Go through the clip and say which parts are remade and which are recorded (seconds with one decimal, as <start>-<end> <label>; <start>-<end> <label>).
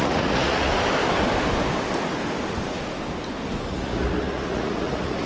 0.0-0.7 remade; 0.7-3.7 recorded; 3.7-5.3 remade